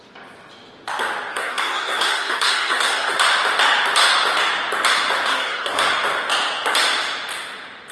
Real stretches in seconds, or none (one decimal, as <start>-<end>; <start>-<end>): 0.0-1.3; 3.1-5.3; 5.9-7.9